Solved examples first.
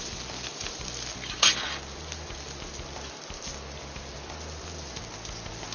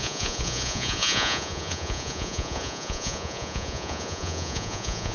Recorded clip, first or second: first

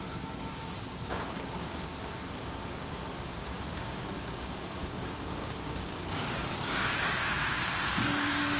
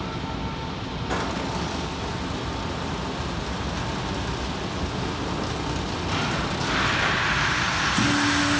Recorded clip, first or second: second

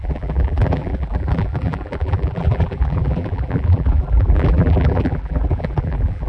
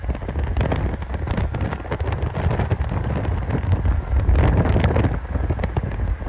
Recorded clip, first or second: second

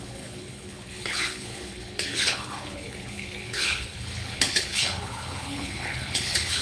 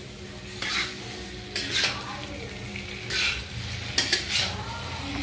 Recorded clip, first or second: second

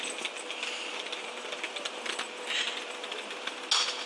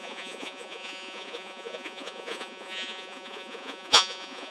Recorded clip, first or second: first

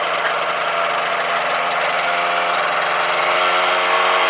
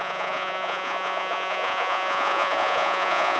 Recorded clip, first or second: first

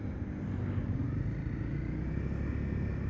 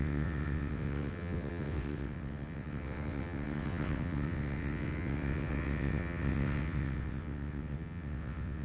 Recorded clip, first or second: first